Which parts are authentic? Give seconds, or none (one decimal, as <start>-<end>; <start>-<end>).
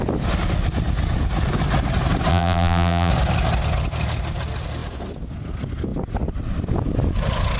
0.0-2.3; 3.1-7.6